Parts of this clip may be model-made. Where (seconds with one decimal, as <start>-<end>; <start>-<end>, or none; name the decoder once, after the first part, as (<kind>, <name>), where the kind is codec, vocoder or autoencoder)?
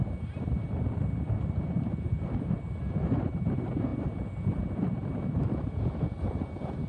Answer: none